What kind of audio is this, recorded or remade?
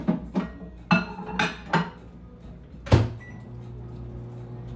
recorded